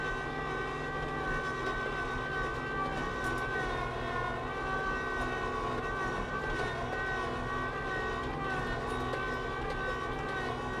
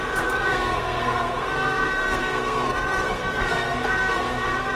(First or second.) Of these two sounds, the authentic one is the first